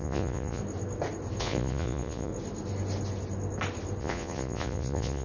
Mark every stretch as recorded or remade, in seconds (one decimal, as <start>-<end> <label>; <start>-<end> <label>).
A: 0.0-0.6 remade; 0.6-1.4 recorded; 1.4-2.3 remade; 2.3-4.0 recorded; 4.0-5.2 remade